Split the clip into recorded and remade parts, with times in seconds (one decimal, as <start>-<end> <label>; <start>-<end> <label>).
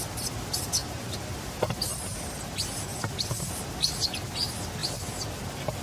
0.0-5.8 recorded